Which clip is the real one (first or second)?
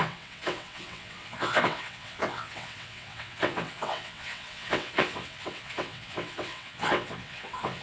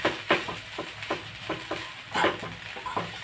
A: second